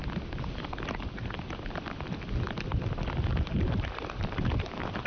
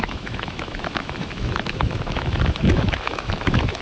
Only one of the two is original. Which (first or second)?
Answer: first